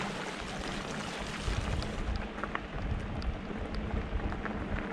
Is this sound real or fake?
real